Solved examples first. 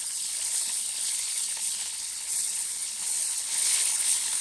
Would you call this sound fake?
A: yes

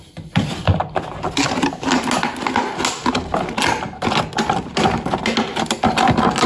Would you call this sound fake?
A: no